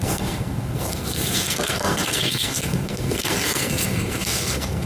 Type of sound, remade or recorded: remade